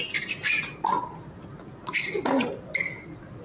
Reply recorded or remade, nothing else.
recorded